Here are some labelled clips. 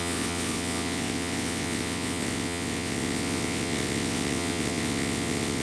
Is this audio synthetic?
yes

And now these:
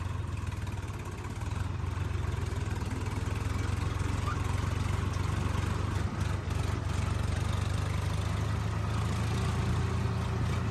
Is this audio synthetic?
no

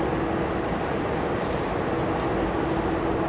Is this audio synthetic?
no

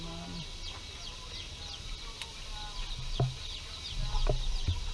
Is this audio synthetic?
no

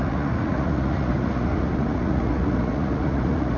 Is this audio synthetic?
yes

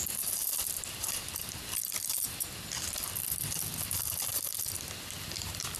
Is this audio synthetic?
yes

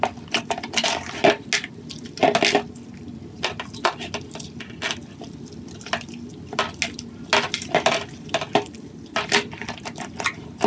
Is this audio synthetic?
no